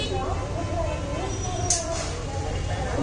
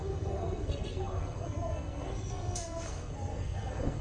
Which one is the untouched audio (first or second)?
first